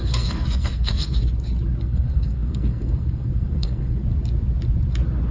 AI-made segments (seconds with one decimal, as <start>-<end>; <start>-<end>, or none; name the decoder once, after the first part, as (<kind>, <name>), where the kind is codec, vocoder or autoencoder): 0.0-1.2 (codec, SNAC); 1.8-4.0